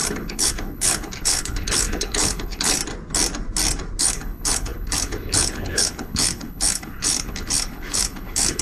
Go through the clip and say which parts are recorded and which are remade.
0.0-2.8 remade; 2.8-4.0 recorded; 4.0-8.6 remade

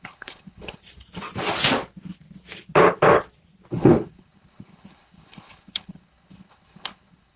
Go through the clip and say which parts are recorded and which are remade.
0.0-0.8 remade; 0.8-3.7 recorded; 3.7-7.4 remade